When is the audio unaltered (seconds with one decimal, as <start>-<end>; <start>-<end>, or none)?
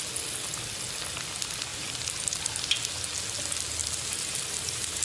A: 0.0-1.7; 2.2-3.8